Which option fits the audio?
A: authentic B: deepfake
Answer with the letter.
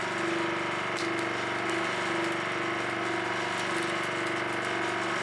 A